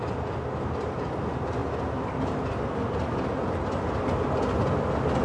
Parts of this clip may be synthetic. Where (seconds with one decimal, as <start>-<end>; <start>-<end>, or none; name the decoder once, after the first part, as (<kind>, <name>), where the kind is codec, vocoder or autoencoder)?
none